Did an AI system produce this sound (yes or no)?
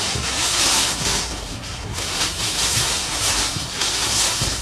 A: yes